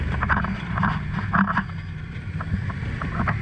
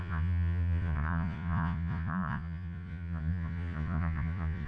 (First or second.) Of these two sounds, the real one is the first